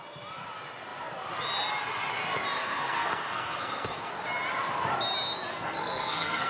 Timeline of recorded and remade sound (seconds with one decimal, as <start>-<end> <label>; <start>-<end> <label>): 0.0-2.6 recorded; 2.6-4.1 remade; 4.1-5.5 recorded; 5.5-6.5 remade